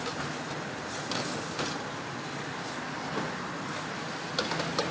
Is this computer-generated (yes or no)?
no